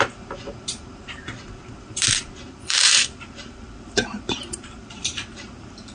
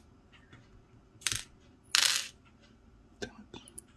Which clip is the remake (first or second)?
first